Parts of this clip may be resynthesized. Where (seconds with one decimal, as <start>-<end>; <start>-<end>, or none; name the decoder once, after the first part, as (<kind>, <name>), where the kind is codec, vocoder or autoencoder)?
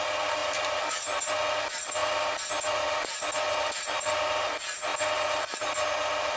none